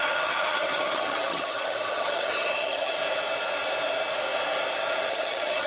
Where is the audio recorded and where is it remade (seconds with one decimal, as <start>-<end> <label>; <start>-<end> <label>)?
0.0-3.0 remade; 3.0-5.1 recorded; 5.1-5.7 remade